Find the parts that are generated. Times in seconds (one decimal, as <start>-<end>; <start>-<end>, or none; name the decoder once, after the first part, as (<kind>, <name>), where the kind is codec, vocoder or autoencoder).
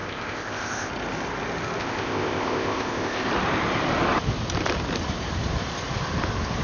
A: 0.0-0.9 (codec, ZipCodec); 1.8-3.3